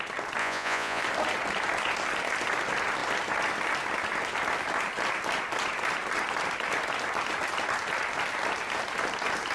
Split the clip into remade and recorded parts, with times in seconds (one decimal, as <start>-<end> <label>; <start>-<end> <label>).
0.0-0.4 recorded; 0.4-1.0 remade; 1.0-9.5 recorded